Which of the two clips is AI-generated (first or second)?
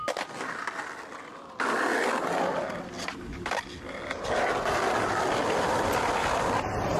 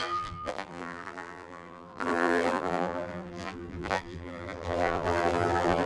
second